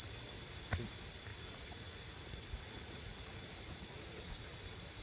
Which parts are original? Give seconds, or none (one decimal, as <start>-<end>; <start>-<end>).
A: 0.0-1.3; 4.3-5.0